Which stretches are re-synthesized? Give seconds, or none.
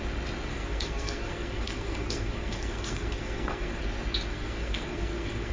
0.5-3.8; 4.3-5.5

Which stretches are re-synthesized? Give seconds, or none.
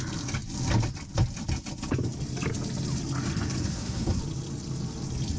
3.6-4.2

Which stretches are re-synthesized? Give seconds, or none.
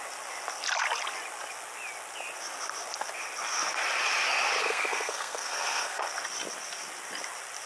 4.6-6.0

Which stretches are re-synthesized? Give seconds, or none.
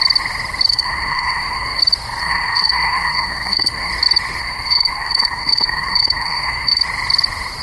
0.7-1.8; 2.2-3.9; 4.4-6.8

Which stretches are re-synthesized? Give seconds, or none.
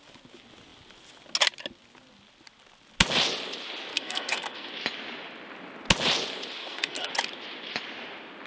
3.9-4.7; 6.6-7.1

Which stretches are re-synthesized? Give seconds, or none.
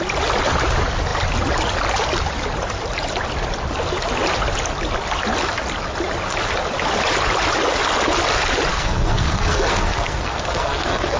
8.7-11.2